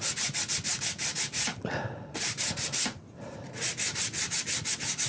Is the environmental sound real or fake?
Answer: fake